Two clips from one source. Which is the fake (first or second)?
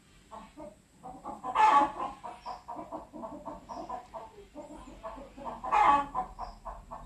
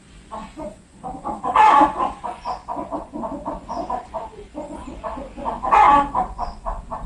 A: second